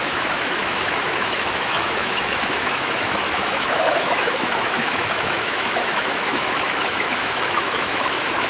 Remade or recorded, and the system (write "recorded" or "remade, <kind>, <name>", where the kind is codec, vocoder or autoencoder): remade, autoencoder, DAC-VAE